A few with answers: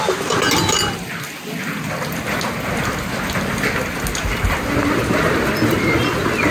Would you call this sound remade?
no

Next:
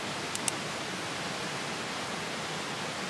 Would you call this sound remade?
no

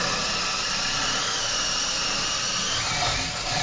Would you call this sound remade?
no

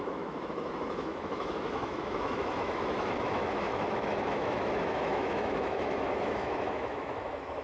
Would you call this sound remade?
yes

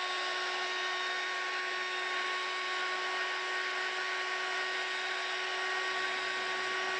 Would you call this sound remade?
no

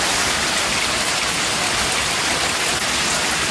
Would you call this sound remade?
no